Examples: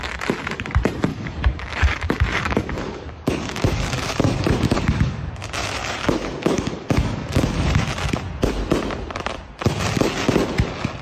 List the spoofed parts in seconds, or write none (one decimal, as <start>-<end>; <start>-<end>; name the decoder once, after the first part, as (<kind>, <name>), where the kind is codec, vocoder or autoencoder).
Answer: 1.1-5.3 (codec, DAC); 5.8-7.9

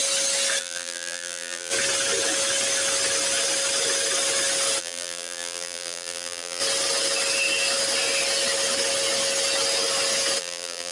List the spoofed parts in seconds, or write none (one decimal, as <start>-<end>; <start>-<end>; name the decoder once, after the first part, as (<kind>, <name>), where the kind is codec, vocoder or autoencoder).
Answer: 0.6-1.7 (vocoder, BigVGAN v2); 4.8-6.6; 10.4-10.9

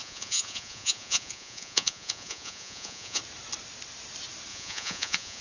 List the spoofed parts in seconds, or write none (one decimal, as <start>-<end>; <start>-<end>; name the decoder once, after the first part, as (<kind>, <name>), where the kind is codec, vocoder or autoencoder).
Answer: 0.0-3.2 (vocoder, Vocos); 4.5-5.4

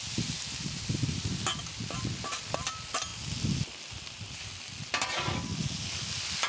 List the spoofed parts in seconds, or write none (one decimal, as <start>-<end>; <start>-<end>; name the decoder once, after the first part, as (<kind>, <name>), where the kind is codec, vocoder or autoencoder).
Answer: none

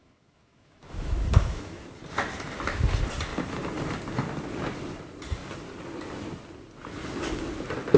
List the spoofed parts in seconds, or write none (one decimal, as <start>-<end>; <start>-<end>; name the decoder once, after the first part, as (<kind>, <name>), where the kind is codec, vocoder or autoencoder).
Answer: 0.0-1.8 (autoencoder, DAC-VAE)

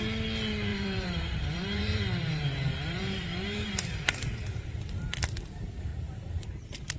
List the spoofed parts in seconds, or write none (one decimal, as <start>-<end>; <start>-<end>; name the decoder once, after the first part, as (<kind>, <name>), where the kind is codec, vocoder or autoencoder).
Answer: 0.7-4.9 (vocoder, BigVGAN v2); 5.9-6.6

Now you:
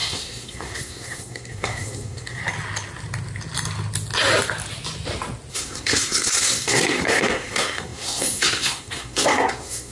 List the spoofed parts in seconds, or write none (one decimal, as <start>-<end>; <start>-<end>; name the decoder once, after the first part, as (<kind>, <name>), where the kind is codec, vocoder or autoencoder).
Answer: 0.0-2.4 (codec, SNAC); 5.5-9.9